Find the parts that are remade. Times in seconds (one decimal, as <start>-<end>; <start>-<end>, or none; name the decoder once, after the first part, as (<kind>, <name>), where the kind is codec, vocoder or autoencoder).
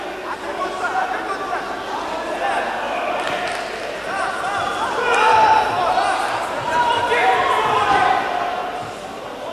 8.6-9.5 (vocoder, BigVGAN v2)